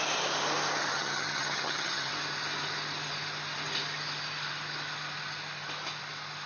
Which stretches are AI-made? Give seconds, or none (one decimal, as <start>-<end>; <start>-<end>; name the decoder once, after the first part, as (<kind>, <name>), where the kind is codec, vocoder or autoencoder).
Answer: 0.9-2.1 (vocoder, HiFi-GAN)